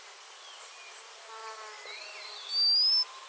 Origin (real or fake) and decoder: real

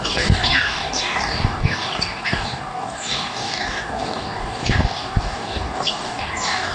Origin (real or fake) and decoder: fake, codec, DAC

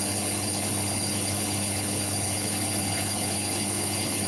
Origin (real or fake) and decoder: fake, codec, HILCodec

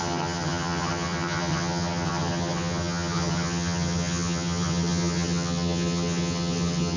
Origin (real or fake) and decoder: fake, vocoder, HiFi-GAN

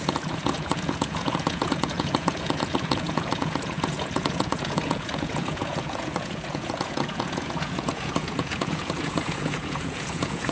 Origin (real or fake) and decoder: fake, vocoder, Vocos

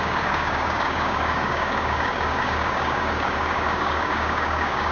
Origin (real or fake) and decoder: fake, codec, DAC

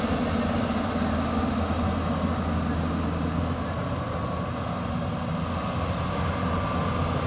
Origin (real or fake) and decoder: real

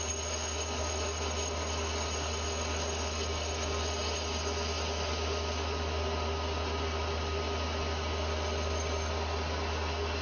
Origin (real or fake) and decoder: real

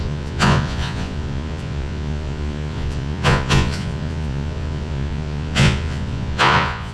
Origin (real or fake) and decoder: fake, vocoder, Vocos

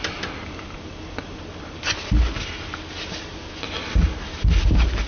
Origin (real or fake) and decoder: real